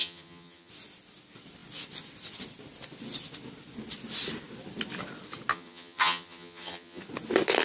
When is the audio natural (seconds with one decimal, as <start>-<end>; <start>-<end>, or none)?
0.7-5.5; 7.0-7.6